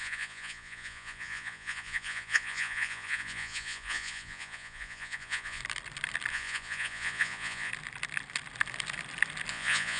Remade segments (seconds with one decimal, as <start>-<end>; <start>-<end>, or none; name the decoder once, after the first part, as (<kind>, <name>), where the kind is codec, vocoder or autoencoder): 0.0-5.6 (vocoder, Vocos); 6.3-7.7; 9.5-10.0